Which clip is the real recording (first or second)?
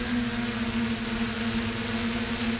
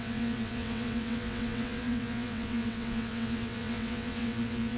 first